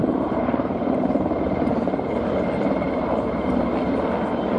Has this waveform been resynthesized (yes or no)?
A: yes